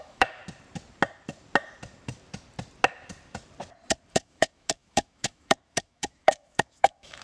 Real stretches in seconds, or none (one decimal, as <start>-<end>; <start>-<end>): 0.4-4.1